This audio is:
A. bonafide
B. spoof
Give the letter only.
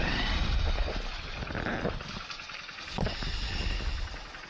A